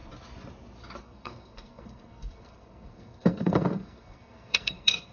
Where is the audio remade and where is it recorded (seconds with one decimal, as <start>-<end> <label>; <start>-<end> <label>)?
0.0-1.0 recorded; 1.0-5.1 remade